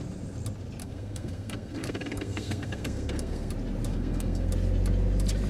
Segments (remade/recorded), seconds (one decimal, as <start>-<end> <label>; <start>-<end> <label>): 0.0-0.8 recorded; 0.8-3.5 remade; 3.5-3.9 recorded; 3.9-4.5 remade; 4.5-5.5 recorded

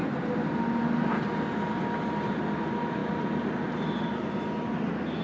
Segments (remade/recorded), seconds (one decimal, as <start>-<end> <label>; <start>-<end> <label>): 0.0-5.2 recorded

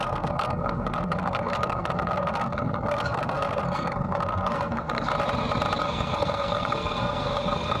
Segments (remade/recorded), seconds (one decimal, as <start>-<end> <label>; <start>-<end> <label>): 0.0-5.1 remade; 5.1-5.8 recorded; 5.8-7.8 remade

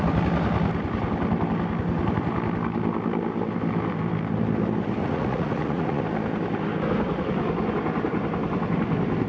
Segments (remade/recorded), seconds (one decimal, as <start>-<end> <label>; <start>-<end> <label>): 0.0-5.0 recorded; 5.0-6.0 remade; 6.0-9.3 recorded

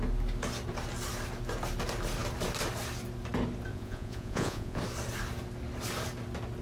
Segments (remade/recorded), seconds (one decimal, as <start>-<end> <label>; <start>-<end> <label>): 0.0-3.7 recorded; 3.7-4.8 remade; 4.8-6.6 recorded

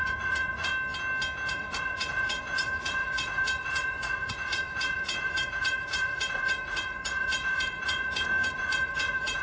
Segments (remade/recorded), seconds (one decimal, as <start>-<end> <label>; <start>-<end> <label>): 0.0-0.7 remade; 0.7-1.5 recorded; 1.5-9.4 remade